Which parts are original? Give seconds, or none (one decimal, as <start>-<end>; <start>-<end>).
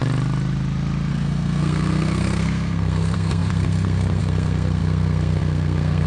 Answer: 0.0-1.1